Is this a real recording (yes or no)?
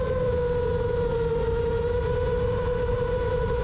yes